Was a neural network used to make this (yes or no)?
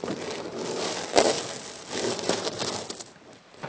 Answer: no